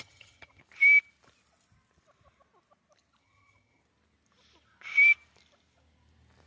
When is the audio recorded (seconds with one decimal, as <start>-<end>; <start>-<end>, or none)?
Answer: 0.6-3.2; 3.8-6.5